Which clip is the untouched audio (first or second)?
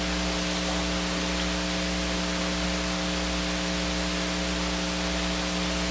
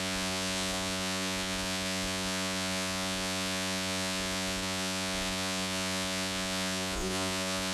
first